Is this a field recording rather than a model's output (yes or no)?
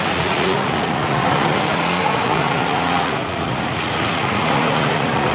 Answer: no